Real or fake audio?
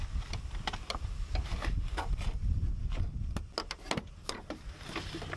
real